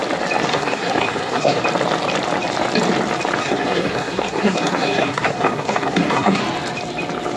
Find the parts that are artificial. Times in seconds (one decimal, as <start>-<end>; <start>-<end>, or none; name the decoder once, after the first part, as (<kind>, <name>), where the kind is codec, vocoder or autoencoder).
0.5-1.6 (codec, SNAC); 3.4-6.4